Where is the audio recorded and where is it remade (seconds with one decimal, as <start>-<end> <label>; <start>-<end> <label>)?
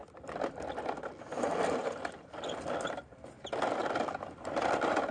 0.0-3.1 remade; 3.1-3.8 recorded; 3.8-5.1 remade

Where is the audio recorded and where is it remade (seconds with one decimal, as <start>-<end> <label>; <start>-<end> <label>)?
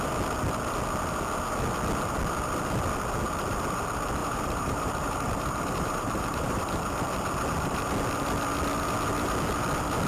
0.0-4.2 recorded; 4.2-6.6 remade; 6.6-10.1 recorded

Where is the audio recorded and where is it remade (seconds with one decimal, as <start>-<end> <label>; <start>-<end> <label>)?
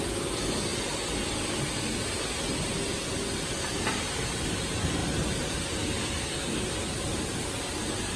0.0-5.0 recorded; 5.0-5.6 remade; 5.6-8.2 recorded